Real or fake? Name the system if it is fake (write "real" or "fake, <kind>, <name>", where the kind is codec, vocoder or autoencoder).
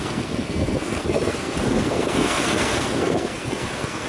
fake, codec, SNAC